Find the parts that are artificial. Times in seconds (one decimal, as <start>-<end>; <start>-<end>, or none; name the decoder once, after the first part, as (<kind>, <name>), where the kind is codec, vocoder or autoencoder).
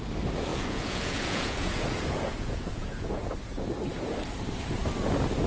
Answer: 0.5-3.8 (vocoder, Vocos)